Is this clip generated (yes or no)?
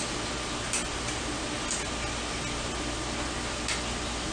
no